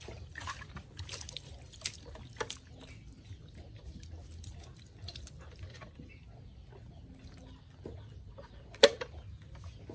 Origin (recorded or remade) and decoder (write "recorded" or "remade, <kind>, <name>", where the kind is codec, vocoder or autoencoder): recorded